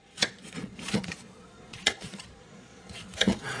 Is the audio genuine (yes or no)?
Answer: no